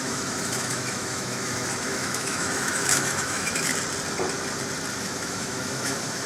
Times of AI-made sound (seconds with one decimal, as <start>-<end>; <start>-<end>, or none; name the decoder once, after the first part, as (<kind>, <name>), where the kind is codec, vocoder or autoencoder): 0.0-3.7 (autoencoder, DAC-VAE); 4.9-6.3